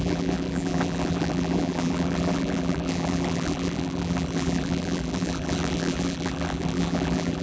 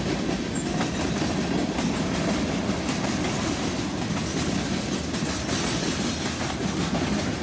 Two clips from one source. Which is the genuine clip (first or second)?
second